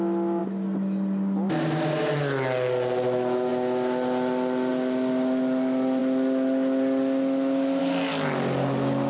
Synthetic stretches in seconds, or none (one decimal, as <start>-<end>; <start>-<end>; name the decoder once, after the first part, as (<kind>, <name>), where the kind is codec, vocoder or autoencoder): none